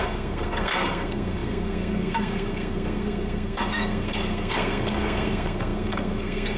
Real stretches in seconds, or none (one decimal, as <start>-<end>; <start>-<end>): none